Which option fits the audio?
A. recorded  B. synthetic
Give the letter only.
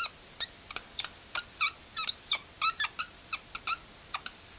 A